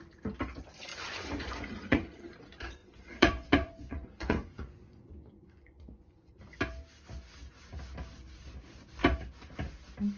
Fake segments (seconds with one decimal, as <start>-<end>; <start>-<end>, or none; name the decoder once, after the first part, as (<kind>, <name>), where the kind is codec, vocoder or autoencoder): 0.9-2.3 (vocoder, Vocos); 2.8-6.3